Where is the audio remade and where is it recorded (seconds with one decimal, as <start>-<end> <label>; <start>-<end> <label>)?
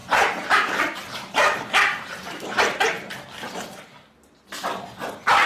0.0-3.1 remade; 3.1-5.5 recorded